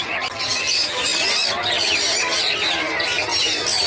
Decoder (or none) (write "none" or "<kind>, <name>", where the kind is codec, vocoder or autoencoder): none